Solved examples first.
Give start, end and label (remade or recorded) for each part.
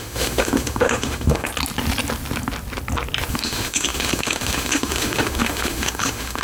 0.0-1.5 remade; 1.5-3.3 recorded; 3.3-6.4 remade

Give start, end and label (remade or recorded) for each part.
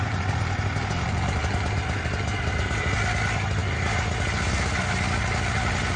0.0-6.0 recorded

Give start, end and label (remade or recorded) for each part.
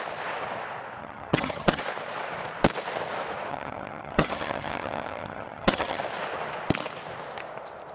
0.0-1.0 recorded; 1.0-1.8 remade; 1.8-3.5 recorded; 3.5-6.0 remade; 6.0-7.9 recorded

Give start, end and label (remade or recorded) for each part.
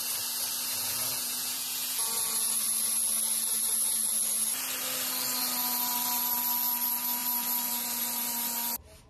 0.0-0.8 recorded; 0.8-2.5 remade; 2.5-9.1 recorded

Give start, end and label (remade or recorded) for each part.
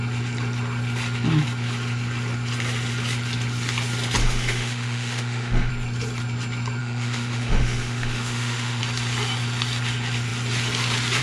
0.0-4.2 recorded; 4.2-5.7 remade; 5.7-6.8 recorded; 6.8-8.8 remade; 8.8-11.2 recorded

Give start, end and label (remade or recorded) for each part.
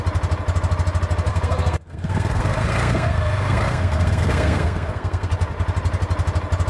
0.0-1.3 recorded; 1.3-5.3 remade; 5.3-6.7 recorded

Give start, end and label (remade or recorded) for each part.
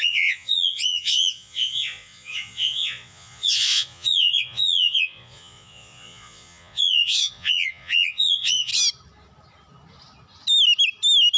0.0-8.7 remade; 8.7-11.4 recorded